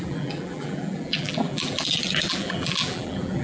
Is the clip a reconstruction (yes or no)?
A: yes